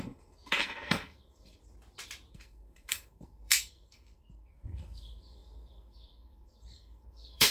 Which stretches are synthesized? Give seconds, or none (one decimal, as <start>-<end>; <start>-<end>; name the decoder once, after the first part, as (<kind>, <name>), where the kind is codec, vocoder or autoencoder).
0.0-1.6 (codec, SNAC); 2.3-7.5